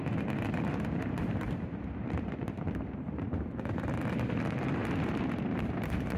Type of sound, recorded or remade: remade